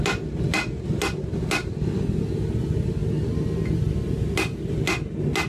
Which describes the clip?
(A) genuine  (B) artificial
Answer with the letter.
A